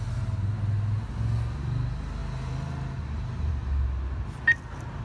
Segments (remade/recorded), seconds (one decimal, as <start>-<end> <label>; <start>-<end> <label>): 0.0-5.0 recorded